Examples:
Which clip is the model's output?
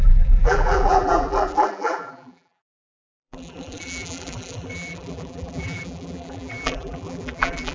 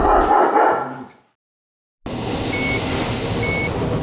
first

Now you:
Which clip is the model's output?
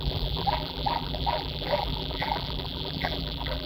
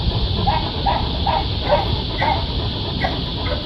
first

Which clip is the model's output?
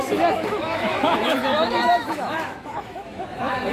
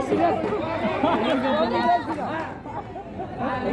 first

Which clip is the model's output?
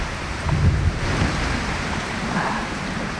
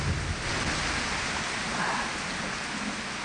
first